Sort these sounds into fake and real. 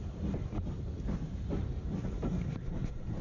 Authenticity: real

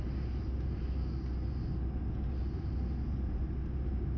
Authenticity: real